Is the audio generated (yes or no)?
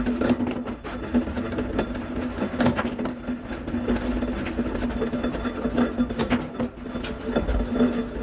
no